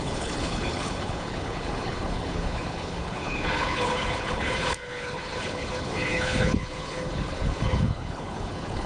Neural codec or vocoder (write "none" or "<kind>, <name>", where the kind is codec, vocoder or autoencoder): codec, HILCodec